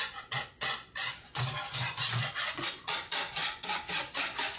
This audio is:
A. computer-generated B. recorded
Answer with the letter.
A